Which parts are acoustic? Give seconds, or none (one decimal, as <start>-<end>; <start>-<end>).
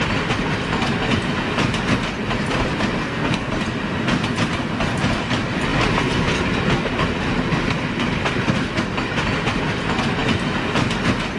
0.0-3.0; 3.5-11.4